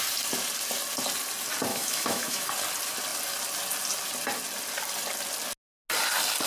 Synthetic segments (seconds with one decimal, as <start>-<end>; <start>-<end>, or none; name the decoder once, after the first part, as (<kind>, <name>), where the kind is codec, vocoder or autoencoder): 1.7-2.5 (autoencoder, DAC-VAE)